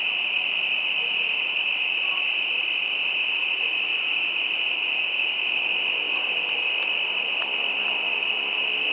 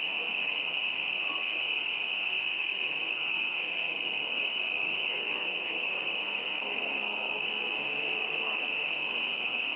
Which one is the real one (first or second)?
first